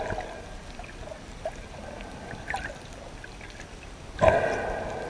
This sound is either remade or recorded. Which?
recorded